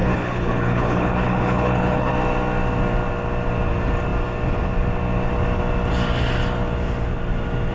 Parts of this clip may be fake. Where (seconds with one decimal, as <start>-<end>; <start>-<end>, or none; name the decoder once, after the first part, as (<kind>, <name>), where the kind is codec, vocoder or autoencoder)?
0.0-2.1 (codec, HILCodec)